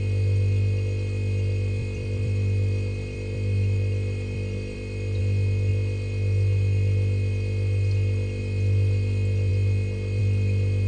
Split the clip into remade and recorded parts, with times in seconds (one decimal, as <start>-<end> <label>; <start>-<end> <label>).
0.0-1.8 recorded; 1.8-5.2 remade; 5.2-10.9 recorded

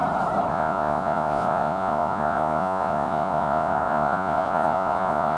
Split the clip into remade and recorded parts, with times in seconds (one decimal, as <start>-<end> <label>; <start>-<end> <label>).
0.0-0.5 recorded; 0.5-5.4 remade

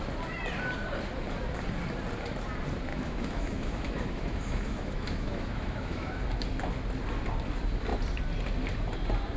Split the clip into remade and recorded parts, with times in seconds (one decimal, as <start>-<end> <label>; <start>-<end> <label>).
0.0-2.9 recorded; 2.9-6.2 remade; 6.2-9.4 recorded

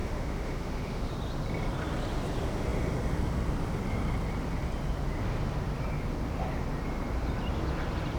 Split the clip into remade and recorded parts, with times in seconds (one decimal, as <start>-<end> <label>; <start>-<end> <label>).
0.0-1.1 remade; 1.1-8.2 recorded

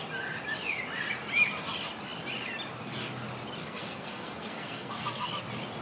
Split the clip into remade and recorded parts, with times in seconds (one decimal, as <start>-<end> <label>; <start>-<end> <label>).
0.0-3.6 recorded; 3.6-5.3 remade; 5.3-5.8 recorded

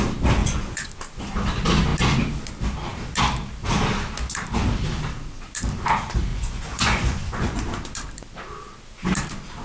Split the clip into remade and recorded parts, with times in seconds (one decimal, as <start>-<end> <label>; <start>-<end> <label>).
0.0-0.4 recorded; 0.4-0.9 remade; 0.9-6.3 recorded; 6.3-7.6 remade; 7.6-9.6 recorded

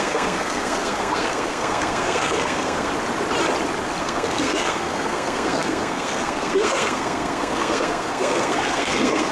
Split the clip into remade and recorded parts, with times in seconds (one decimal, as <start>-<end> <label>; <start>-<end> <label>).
0.0-2.9 remade; 2.9-4.0 recorded; 4.0-9.3 remade

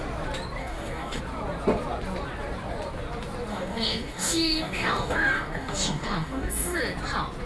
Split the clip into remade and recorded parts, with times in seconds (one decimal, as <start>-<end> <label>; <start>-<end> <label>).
0.0-0.6 recorded; 0.6-1.2 remade; 1.2-3.5 recorded; 3.5-6.8 remade; 6.8-7.5 recorded